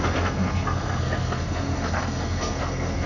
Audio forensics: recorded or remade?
remade